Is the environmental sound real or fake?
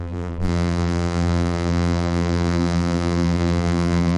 fake